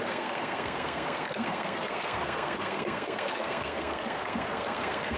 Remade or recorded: remade